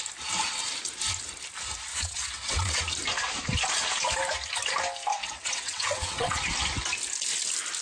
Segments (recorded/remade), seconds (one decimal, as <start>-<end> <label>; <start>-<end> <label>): 0.0-1.9 recorded; 1.9-2.8 remade; 2.8-5.1 recorded; 5.1-6.4 remade; 6.4-7.8 recorded